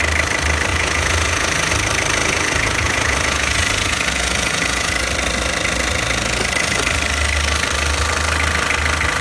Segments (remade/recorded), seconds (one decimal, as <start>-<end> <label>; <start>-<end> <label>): 0.0-0.7 recorded; 0.7-1.7 remade; 1.7-2.2 recorded; 2.2-4.9 remade; 4.9-9.2 recorded

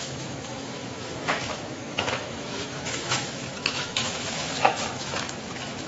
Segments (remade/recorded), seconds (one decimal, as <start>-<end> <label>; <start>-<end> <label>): 0.0-5.9 remade

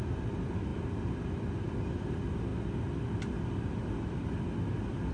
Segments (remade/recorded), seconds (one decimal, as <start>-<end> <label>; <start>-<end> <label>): 0.0-5.1 recorded

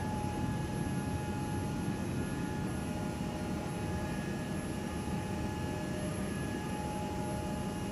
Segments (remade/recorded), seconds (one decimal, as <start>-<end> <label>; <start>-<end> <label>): 0.0-0.7 remade; 0.7-6.1 recorded; 6.1-6.7 remade; 6.7-7.9 recorded

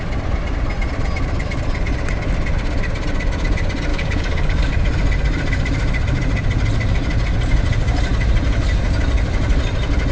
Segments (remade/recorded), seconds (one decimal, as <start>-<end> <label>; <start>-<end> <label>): 0.0-3.9 recorded; 3.9-4.7 remade; 4.7-10.1 recorded

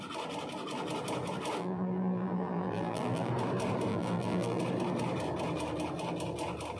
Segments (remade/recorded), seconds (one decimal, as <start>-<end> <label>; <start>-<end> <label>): 0.0-1.6 recorded; 1.6-3.3 remade; 3.3-3.9 recorded; 3.9-4.6 remade; 4.6-6.8 recorded

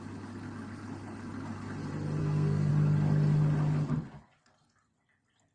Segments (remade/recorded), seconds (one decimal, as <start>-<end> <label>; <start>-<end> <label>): 0.0-2.2 recorded; 2.2-2.7 remade; 2.7-5.5 recorded

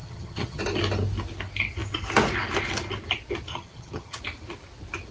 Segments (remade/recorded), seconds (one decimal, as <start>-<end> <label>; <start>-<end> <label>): 0.0-0.6 remade; 0.6-3.5 recorded; 3.5-4.2 remade; 4.2-5.1 recorded